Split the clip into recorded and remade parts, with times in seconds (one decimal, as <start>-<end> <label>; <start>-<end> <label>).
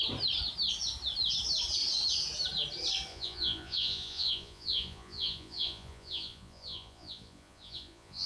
0.0-3.1 recorded; 3.1-8.3 remade